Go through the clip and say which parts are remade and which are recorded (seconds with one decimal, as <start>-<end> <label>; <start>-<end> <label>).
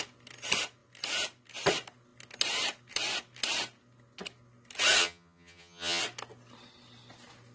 0.0-5.0 recorded; 5.0-6.0 remade; 6.0-7.5 recorded